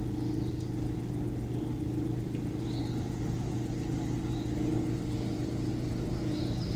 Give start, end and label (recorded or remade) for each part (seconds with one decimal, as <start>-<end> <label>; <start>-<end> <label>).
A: 0.0-6.8 recorded